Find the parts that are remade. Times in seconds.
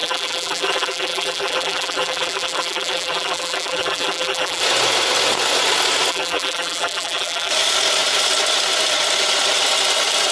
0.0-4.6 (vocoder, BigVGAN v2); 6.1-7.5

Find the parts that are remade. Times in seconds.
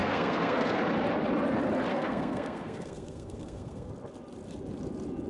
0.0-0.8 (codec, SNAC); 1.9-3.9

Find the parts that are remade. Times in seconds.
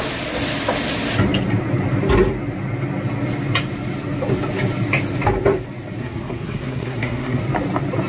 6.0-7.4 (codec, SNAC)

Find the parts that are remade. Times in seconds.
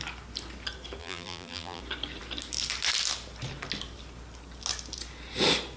1.0-1.8 (vocoder, BigVGAN v2)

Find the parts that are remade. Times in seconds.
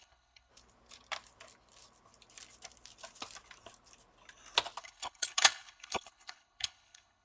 0.0-0.5 (codec, HILCodec); 4.8-7.2